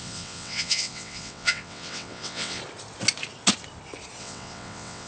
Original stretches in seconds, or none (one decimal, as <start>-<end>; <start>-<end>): 2.6-4.2